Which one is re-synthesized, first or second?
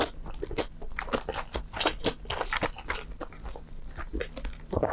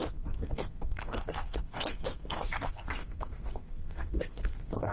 second